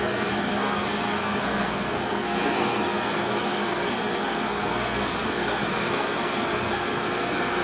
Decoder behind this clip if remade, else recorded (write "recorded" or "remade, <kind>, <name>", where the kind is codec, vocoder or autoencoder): remade, codec, SNAC